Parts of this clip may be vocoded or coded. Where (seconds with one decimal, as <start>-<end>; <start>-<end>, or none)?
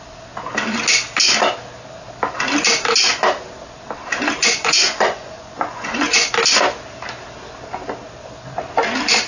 4.4-6.3